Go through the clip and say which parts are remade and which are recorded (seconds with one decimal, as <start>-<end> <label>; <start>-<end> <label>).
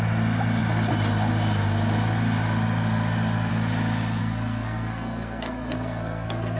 0.0-4.2 recorded; 4.2-6.6 remade